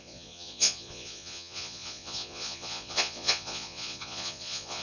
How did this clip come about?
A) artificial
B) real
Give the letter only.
A